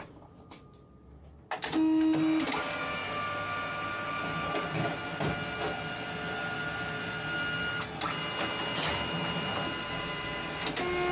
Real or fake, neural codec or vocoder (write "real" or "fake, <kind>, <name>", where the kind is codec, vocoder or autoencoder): real